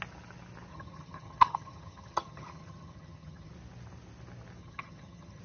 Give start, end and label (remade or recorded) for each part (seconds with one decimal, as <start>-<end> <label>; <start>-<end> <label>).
0.0-0.7 recorded; 0.7-3.5 remade; 3.5-4.6 recorded; 4.6-5.4 remade